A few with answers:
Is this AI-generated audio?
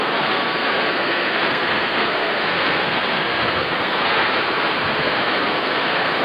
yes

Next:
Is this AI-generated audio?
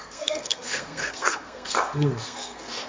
yes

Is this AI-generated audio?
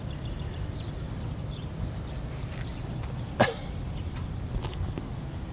no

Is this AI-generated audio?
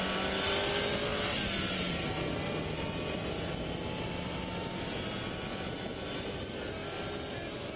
no